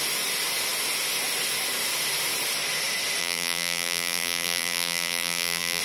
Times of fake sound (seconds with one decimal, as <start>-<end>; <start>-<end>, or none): 3.2-5.8